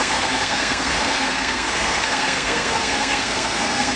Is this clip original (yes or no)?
no